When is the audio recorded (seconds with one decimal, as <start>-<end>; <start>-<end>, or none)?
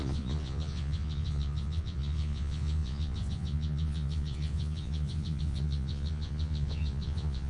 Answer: none